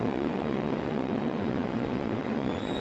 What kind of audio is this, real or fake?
fake